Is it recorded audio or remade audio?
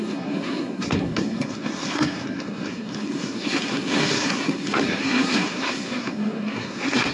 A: remade